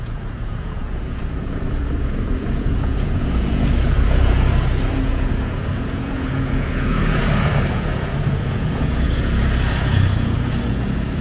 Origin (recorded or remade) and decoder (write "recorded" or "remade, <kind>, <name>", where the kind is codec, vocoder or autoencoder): remade, vocoder, Vocos